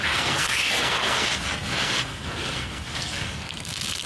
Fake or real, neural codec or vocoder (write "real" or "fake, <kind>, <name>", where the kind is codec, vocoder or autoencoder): fake, codec, SNAC